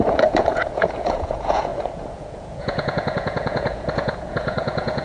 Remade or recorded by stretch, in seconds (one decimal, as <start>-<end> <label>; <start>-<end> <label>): 0.0-5.0 remade